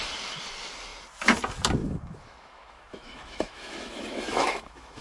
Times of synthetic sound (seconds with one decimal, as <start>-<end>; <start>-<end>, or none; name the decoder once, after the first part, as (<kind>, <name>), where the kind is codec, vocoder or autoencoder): 1.8-5.0 (autoencoder, DAC-VAE)